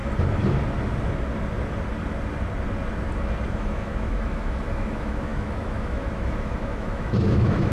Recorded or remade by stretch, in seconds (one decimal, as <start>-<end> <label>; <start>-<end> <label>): 0.0-3.5 recorded; 3.5-7.7 remade